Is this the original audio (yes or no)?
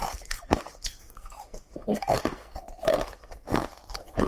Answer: no